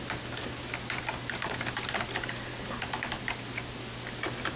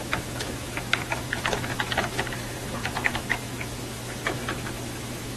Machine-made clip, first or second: second